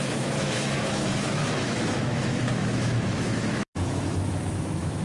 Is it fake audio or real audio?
fake